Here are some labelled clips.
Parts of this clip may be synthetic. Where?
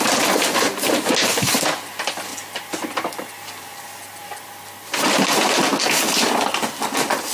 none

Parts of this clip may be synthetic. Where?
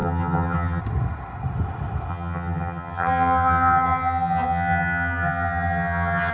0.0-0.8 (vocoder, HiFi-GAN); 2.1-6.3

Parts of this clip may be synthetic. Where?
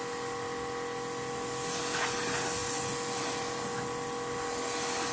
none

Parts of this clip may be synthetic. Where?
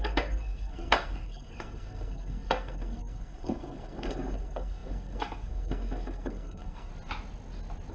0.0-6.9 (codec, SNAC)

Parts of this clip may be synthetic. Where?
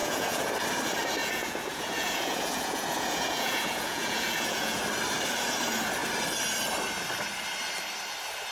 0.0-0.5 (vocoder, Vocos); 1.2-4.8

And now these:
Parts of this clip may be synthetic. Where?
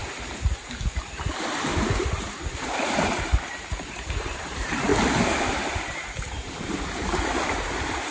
0.6-4.9 (vocoder, BigVGAN v2); 5.4-8.1